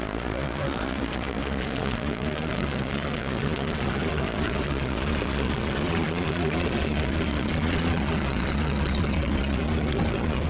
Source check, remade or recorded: remade